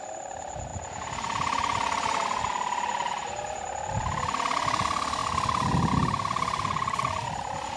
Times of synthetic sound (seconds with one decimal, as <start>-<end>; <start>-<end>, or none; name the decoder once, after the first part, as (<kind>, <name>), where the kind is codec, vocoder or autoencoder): none